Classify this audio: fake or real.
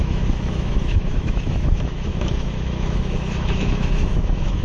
fake